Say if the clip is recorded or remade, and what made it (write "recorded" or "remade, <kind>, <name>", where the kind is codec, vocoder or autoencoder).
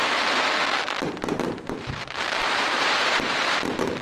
remade, vocoder, BigVGAN v2